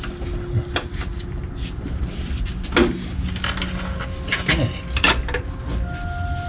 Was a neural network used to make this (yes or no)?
no